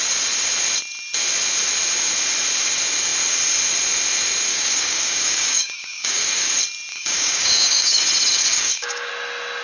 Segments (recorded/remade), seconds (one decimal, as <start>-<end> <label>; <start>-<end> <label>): 0.0-4.5 recorded; 4.5-6.5 remade; 6.5-6.9 recorded; 6.9-8.0 remade; 8.0-8.5 recorded; 8.5-9.1 remade; 9.1-9.6 recorded